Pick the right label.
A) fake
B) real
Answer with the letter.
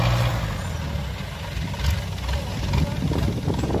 B